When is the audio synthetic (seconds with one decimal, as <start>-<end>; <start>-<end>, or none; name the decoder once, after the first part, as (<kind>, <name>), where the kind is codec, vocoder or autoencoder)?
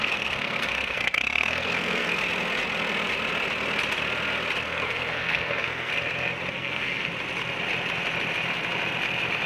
0.0-2.2 (codec, SNAC); 4.6-5.9; 6.5-7.1